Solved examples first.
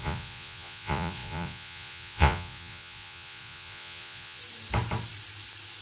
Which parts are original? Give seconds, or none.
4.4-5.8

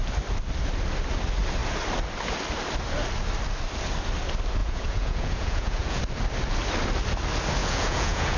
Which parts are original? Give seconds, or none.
0.0-4.6; 6.0-7.6

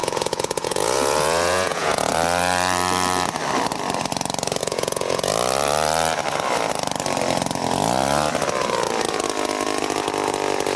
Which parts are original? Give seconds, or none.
2.1-4.6; 5.3-10.8

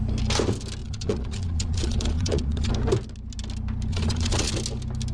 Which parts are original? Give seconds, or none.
0.0-0.8; 2.7-3.9; 4.5-5.1

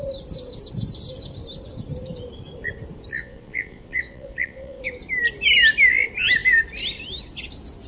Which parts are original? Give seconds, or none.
0.0-3.1; 4.8-7.9

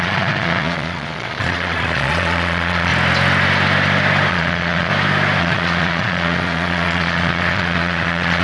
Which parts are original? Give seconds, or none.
2.9-4.3; 4.9-5.4